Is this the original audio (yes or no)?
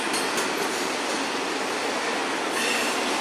yes